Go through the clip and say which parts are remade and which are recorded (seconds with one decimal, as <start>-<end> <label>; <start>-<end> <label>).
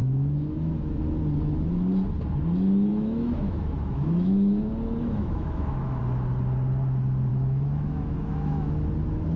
0.0-1.0 remade; 1.0-2.9 recorded; 2.9-6.0 remade; 6.0-7.3 recorded; 7.3-8.7 remade; 8.7-9.4 recorded